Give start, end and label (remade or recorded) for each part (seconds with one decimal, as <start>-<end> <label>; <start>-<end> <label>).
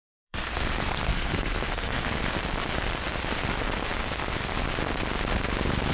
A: 0.0-2.2 remade; 2.2-5.9 recorded